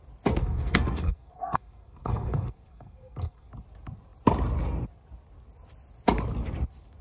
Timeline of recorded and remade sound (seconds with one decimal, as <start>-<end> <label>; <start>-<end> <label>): 0.0-0.4 recorded; 0.4-3.5 remade; 3.5-7.0 recorded